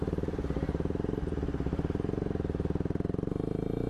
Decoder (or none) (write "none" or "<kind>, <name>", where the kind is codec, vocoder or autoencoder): none